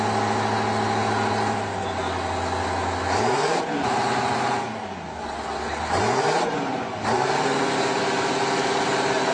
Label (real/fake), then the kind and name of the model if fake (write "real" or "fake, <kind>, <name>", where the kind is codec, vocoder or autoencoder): real